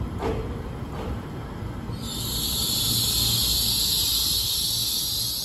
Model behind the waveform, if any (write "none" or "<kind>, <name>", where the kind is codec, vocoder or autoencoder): none